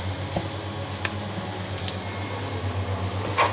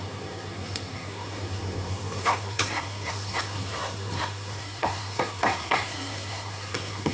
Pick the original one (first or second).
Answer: first